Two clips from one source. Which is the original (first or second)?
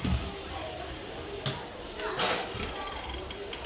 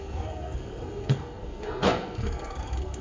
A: first